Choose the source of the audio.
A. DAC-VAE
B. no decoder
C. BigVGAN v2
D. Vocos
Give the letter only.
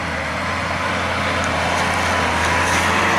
B